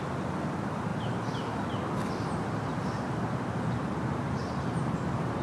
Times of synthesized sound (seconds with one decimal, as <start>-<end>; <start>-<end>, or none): none